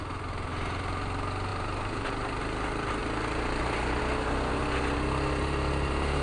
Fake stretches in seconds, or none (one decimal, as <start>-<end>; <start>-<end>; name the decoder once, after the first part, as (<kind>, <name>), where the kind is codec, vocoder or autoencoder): 1.5-2.4 (vocoder, BigVGAN v2); 3.0-4.0